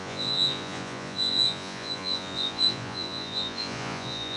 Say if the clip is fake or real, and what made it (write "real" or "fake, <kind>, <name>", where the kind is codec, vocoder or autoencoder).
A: fake, vocoder, Vocos